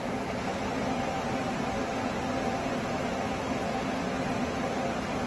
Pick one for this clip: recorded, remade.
recorded